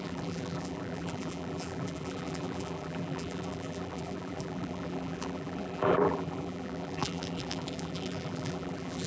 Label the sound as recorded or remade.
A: remade